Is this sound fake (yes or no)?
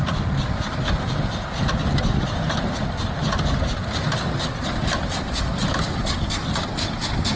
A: yes